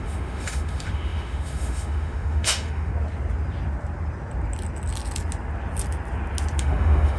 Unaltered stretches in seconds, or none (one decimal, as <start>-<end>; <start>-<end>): 2.9-6.6